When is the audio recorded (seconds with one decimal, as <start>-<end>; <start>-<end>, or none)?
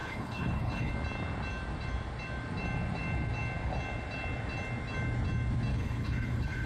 0.9-5.7